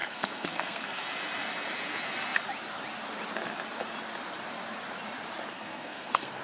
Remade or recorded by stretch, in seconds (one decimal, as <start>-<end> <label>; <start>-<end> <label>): 0.0-1.0 remade; 1.0-5.5 recorded; 5.5-6.4 remade